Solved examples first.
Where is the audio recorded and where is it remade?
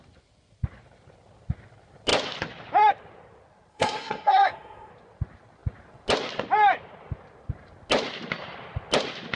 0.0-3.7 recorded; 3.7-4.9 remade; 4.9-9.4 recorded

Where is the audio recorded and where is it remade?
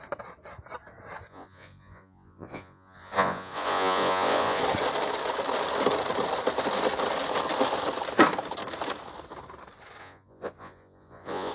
0.0-1.3 recorded; 1.3-4.6 remade; 4.6-10.0 recorded; 10.0-11.5 remade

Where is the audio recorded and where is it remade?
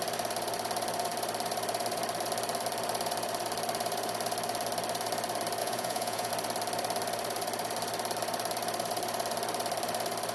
0.0-5.6 recorded; 5.6-6.3 remade; 6.3-10.3 recorded